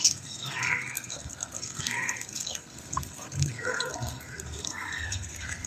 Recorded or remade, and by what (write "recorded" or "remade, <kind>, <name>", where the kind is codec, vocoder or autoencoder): remade, codec, SNAC